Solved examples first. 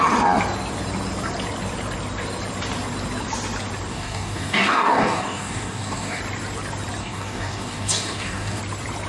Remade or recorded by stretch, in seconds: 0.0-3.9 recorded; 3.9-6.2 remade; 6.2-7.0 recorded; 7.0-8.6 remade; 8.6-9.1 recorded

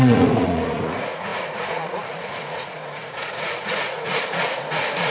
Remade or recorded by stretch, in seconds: 0.0-5.1 remade

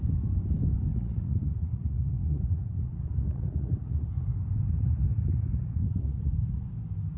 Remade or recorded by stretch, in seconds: 0.0-0.9 recorded; 0.9-4.0 remade; 4.0-4.6 recorded; 4.6-6.3 remade; 6.3-7.2 recorded

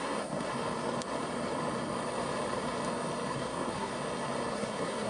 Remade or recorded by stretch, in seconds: 0.0-0.5 remade; 0.5-3.3 recorded; 3.3-3.9 remade; 3.9-4.5 recorded; 4.5-5.1 remade